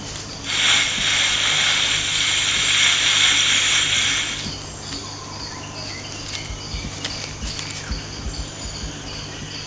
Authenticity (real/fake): real